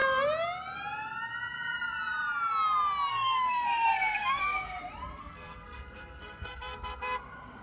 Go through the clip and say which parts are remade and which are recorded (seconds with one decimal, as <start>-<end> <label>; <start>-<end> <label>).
0.0-3.1 recorded; 3.1-4.8 remade; 4.8-5.2 recorded; 5.2-7.0 remade; 7.0-7.6 recorded